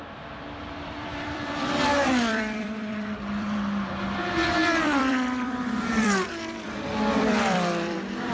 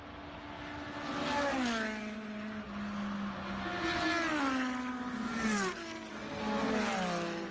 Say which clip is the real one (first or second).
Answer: second